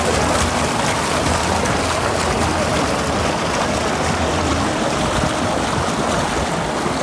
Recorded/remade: recorded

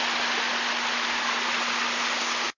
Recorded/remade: recorded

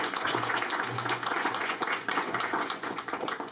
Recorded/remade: remade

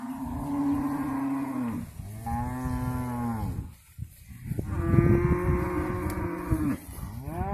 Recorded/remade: recorded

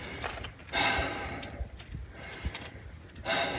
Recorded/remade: recorded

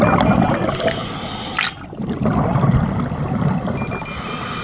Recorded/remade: recorded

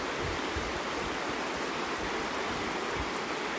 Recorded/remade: recorded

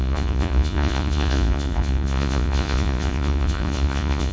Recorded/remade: remade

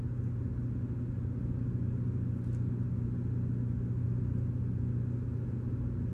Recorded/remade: recorded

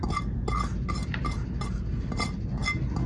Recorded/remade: recorded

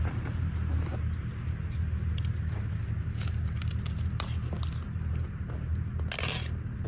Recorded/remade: recorded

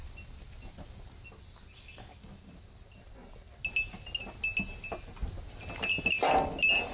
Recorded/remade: recorded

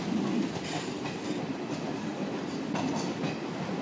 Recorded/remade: recorded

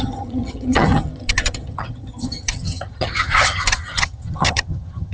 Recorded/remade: remade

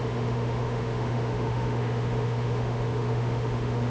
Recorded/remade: remade